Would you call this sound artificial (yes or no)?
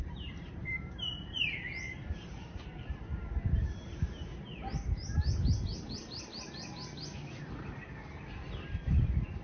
yes